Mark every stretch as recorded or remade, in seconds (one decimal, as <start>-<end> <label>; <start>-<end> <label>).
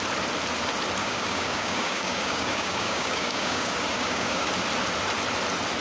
0.0-1.0 recorded; 1.0-4.5 remade; 4.5-5.8 recorded